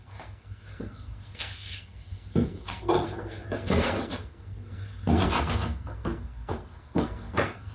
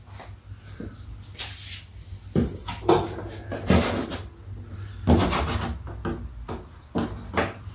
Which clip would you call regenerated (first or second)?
first